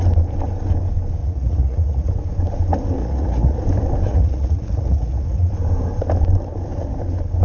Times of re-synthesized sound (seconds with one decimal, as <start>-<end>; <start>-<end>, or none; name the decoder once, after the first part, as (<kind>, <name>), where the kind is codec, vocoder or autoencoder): 1.2-2.1 (vocoder, Vocos); 3.0-3.6; 4.1-5.5